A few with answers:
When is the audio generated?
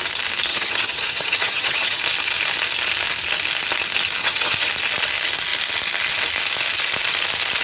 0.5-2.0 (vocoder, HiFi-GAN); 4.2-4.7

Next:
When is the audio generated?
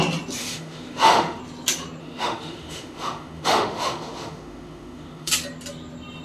0.4-1.4 (autoencoder, DAC-VAE); 2.0-5.3